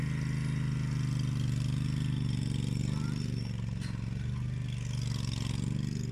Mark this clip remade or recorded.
recorded